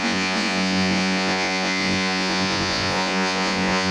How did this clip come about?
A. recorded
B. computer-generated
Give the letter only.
B